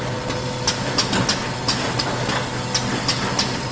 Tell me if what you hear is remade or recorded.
recorded